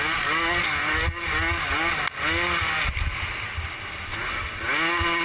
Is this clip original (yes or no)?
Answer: yes